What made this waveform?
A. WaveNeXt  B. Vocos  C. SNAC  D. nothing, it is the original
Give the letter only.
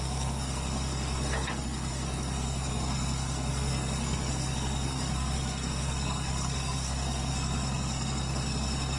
C